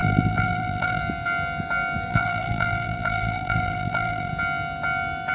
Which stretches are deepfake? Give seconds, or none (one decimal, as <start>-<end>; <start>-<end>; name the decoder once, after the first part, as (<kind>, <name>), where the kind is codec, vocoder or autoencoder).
0.0-1.0 (vocoder, BigVGAN v2); 2.1-4.3